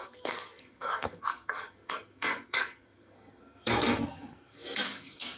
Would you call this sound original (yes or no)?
no